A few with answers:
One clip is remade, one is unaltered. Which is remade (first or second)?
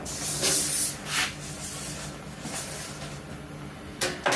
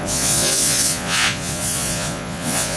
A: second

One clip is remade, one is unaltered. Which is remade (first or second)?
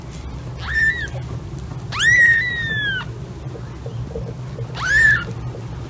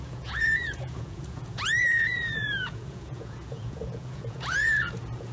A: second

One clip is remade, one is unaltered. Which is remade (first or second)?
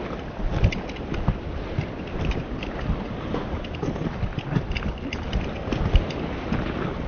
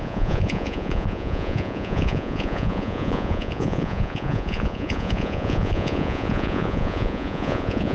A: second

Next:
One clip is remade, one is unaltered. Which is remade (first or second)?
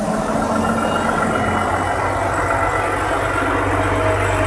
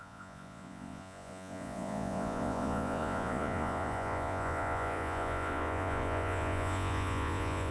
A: second